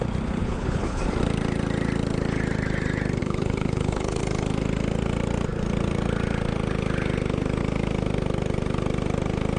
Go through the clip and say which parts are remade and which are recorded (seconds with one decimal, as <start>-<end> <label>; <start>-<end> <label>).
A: 0.0-0.4 recorded; 0.4-1.0 remade; 1.0-3.2 recorded; 3.2-4.2 remade; 4.2-9.6 recorded